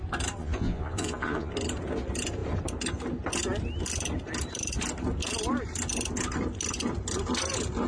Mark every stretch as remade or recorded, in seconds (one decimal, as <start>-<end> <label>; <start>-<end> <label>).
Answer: 0.0-0.4 recorded; 0.4-1.5 remade; 1.5-7.9 recorded